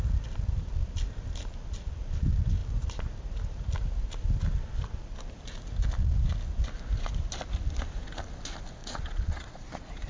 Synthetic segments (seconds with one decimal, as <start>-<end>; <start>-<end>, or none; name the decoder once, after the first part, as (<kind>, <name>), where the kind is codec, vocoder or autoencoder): 8.8-10.1 (vocoder, Vocos)